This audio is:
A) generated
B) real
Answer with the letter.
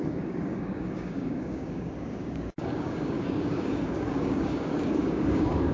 A